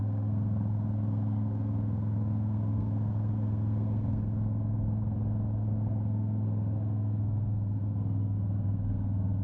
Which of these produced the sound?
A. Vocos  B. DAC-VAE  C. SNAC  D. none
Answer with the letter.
C